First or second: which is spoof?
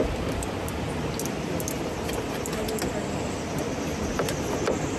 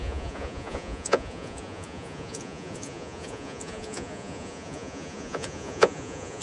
second